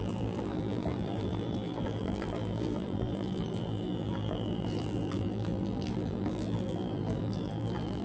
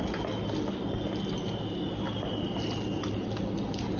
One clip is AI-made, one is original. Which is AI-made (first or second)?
first